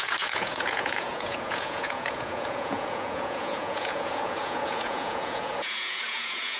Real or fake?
fake